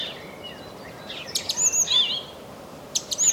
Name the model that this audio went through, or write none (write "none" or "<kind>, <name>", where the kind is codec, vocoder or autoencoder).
none